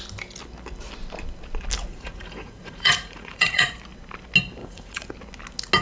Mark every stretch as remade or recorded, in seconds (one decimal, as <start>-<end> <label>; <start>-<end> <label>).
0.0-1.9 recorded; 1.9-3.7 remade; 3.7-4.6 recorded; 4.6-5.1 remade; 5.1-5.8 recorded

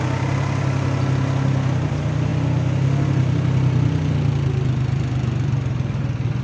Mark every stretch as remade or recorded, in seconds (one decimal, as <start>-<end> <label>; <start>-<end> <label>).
0.0-6.4 recorded

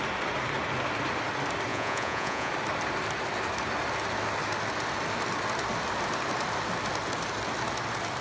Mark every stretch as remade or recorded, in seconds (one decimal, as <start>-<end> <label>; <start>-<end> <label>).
0.0-1.7 recorded; 1.7-2.5 remade; 2.5-8.2 recorded

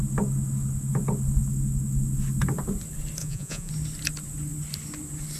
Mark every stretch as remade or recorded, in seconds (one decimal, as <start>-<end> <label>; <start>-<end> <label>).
0.0-3.2 recorded; 3.2-3.7 remade; 3.7-5.4 recorded

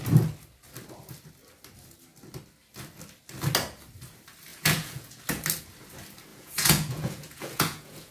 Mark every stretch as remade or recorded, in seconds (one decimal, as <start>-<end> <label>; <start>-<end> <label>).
0.0-4.5 recorded; 4.5-5.2 remade; 5.2-6.3 recorded; 6.3-8.1 remade

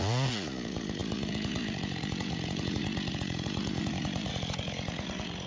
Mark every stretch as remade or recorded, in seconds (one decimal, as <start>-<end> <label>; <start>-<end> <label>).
0.0-5.5 remade